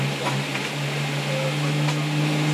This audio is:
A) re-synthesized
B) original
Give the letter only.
B